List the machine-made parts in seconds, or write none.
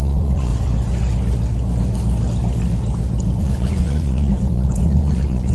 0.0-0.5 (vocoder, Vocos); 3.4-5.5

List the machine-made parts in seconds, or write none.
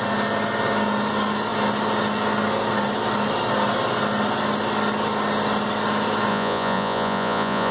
6.3-7.7 (vocoder, Vocos)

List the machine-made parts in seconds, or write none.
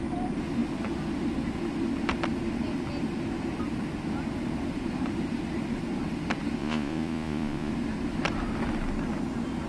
6.6-7.7 (vocoder, Vocos)